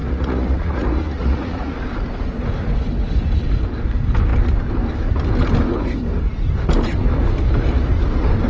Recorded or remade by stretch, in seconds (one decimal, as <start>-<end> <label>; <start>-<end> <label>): 0.0-1.7 remade; 1.7-8.5 recorded